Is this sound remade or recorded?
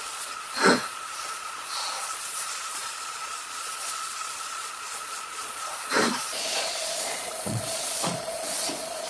remade